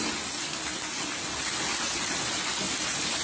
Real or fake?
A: real